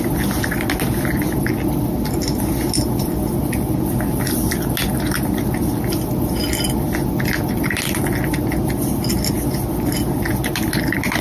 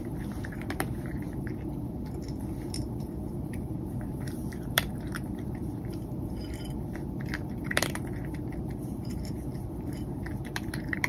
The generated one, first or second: second